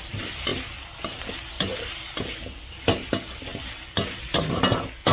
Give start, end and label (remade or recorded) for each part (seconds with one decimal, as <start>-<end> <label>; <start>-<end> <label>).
0.0-5.1 recorded